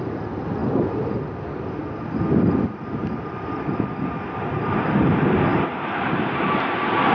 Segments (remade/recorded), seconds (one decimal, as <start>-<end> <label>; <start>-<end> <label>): 0.0-5.5 recorded; 5.5-6.5 remade; 6.5-7.1 recorded